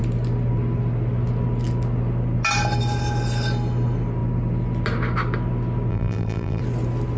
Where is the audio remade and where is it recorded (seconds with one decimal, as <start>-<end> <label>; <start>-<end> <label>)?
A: 0.0-5.9 recorded; 5.9-6.6 remade; 6.6-7.2 recorded